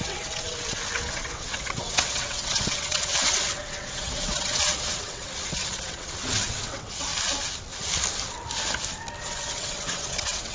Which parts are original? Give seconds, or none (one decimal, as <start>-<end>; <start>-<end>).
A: 7.1-9.2